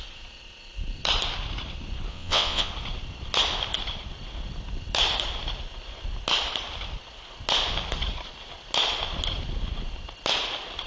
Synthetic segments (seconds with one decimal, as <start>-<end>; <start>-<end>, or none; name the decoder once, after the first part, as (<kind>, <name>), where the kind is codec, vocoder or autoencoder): 2.1-2.7 (vocoder, WaveNeXt)